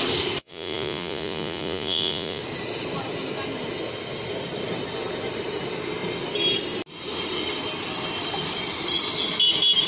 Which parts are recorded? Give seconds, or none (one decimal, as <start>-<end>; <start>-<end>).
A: 0.0-0.4; 2.4-9.9